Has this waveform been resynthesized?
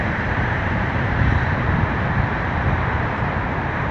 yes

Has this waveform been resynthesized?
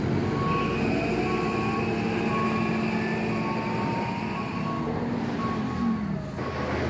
no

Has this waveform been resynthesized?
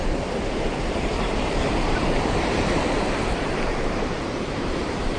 yes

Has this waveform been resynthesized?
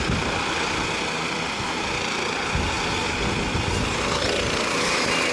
no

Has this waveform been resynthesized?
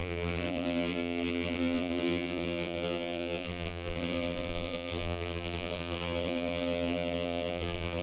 yes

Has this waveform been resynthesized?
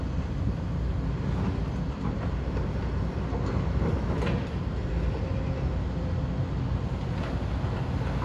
no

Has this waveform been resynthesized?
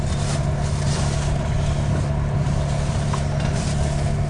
no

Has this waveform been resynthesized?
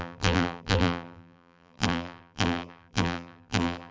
yes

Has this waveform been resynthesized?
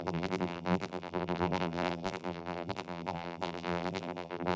yes